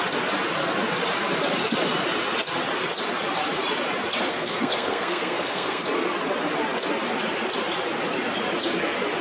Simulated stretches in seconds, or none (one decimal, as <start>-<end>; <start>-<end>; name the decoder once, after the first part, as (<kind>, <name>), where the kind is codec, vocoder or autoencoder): 4.3-5.8 (codec, SNAC)